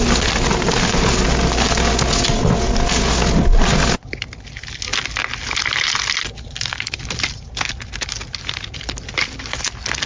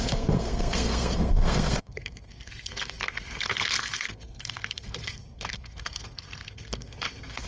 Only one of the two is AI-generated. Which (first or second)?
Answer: second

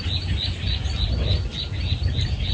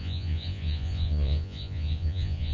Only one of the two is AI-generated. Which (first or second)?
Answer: second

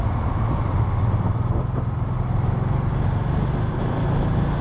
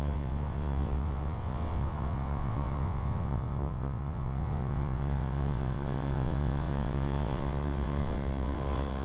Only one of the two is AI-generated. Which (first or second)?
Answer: second